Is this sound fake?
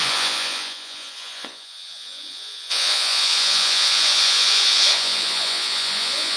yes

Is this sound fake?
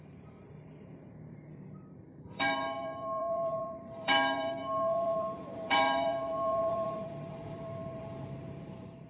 yes